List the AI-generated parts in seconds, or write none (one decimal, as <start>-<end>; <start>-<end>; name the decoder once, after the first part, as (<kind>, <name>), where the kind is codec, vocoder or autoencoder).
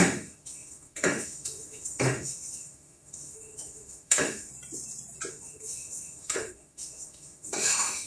0.0-4.5 (autoencoder, DAC-VAE); 5.3-8.1